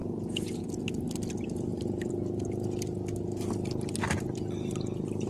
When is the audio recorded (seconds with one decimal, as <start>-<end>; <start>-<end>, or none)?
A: 0.0-5.3